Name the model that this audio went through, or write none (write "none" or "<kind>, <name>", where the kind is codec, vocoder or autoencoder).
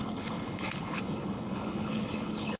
codec, HILCodec